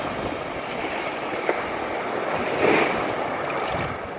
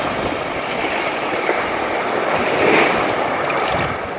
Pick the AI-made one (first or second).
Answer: second